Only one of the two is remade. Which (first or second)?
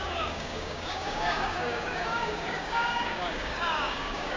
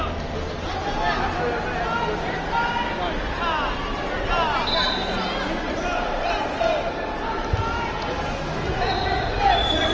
first